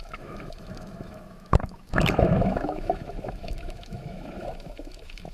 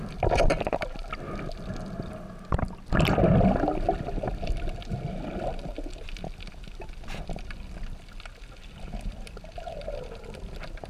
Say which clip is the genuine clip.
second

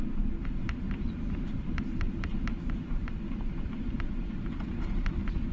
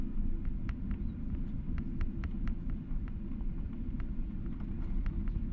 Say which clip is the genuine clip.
second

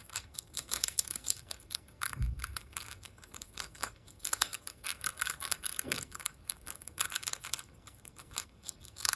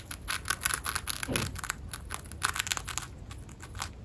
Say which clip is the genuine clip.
second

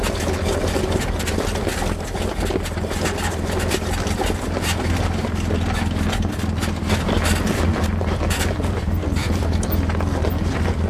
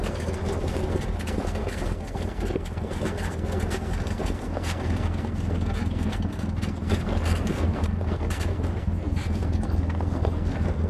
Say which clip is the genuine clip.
first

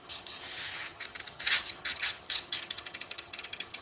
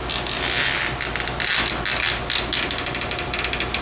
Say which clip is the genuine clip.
second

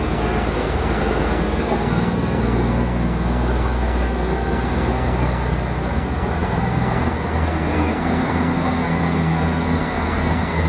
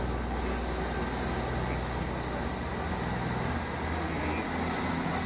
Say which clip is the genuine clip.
second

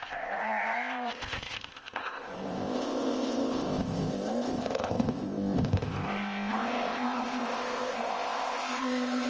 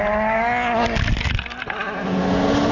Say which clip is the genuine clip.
second